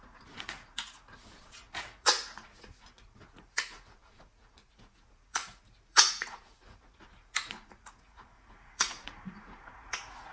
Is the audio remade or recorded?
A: remade